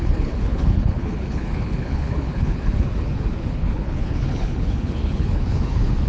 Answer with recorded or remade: remade